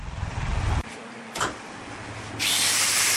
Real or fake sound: real